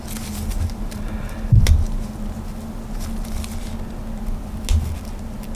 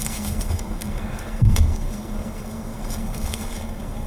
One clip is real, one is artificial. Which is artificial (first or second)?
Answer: second